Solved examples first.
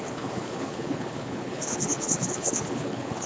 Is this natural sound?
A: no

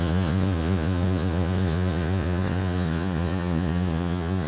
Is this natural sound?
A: no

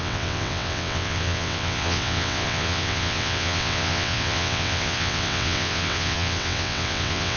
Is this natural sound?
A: no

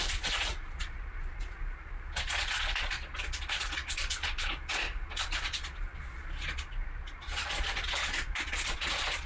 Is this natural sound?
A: no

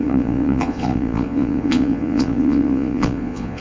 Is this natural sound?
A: no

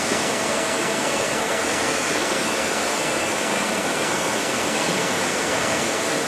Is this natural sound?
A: no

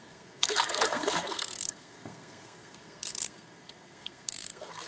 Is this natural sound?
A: no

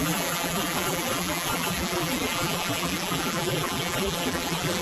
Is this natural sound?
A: no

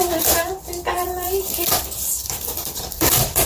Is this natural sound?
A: no